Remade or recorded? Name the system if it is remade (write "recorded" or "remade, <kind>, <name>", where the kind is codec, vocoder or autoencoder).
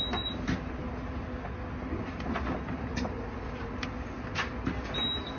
recorded